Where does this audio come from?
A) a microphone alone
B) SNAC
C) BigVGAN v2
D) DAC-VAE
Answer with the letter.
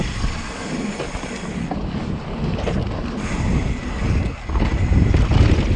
A